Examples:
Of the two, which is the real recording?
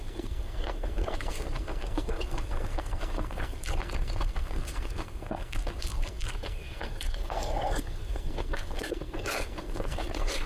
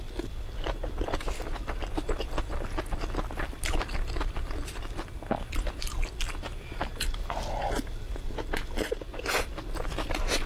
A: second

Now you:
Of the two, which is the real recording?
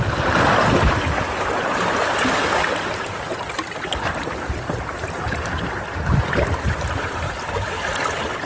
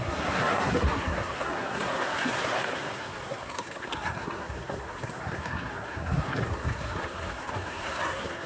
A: first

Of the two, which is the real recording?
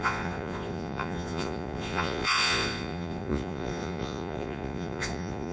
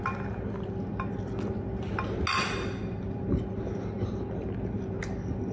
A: second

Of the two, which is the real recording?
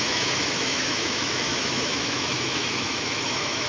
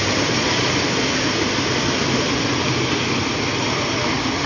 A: second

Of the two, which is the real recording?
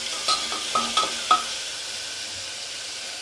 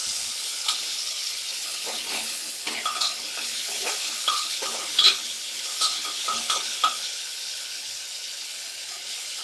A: first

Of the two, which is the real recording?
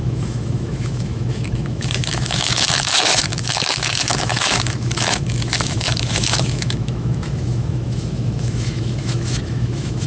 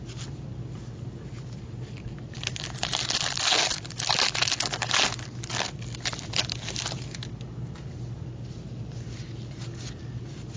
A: second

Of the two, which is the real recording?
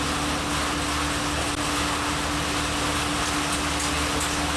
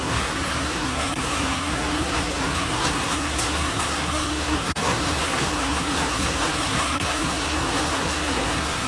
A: first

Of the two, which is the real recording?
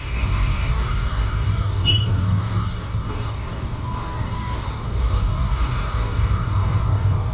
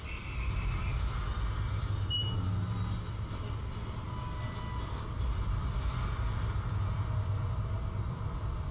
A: second